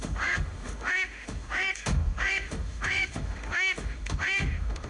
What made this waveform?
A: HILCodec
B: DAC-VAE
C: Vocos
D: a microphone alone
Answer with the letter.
B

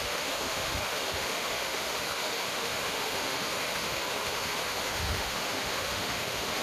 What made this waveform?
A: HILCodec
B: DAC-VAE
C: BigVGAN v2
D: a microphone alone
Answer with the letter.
B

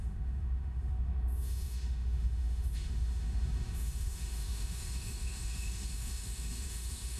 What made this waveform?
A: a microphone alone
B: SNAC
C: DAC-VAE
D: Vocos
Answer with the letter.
C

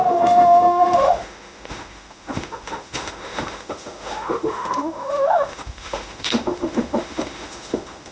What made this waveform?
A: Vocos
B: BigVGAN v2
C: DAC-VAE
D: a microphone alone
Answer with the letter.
C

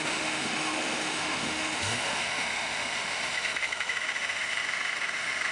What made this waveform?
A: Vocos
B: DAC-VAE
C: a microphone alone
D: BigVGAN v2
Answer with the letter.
B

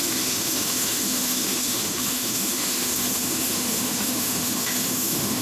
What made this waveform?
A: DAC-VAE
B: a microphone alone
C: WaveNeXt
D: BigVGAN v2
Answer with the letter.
A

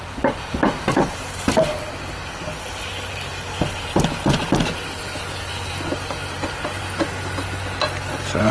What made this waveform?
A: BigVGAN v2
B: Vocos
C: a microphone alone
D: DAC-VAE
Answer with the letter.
C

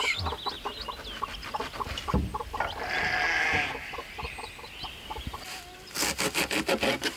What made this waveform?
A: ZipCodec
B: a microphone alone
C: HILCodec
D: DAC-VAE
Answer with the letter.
B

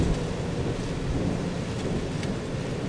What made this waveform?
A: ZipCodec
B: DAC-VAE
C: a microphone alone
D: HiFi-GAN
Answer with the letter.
C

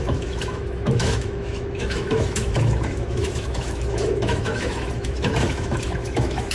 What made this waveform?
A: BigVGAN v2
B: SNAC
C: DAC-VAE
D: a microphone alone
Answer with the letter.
C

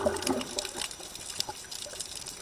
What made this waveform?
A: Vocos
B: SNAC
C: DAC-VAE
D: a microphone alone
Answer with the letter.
D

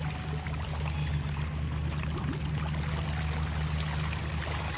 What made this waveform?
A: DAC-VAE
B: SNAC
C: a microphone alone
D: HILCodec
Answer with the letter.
C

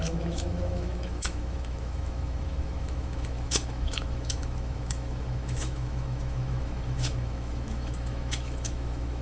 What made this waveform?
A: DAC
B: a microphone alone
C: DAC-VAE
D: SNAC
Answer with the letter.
C